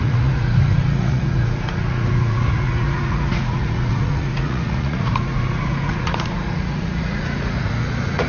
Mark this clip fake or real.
fake